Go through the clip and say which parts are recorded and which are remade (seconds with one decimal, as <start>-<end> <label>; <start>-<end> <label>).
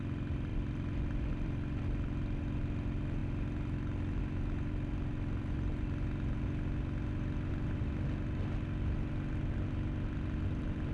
0.0-0.5 recorded; 0.5-1.8 remade; 1.8-10.9 recorded